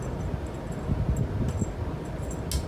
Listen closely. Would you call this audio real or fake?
real